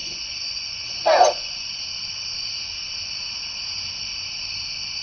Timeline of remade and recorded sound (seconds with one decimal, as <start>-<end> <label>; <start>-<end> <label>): 0.0-1.8 remade; 1.8-5.0 recorded